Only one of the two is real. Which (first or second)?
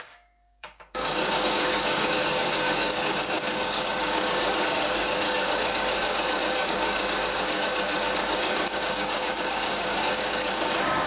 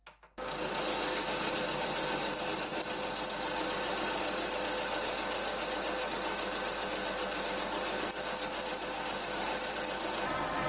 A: second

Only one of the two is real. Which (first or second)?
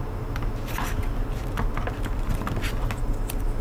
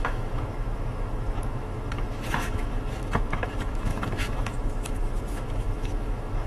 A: first